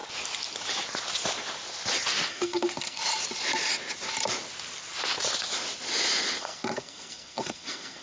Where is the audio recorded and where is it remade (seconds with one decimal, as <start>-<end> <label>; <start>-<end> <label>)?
0.0-2.3 recorded; 2.3-3.0 remade; 3.0-6.4 recorded; 6.4-8.0 remade